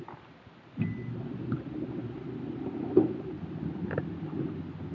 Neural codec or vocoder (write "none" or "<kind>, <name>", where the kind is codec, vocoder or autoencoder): none